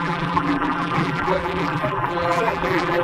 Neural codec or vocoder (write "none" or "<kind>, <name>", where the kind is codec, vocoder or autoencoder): vocoder, BigVGAN v2